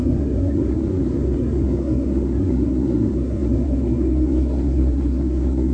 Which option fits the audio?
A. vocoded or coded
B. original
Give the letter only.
A